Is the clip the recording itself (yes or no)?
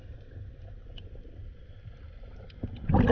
yes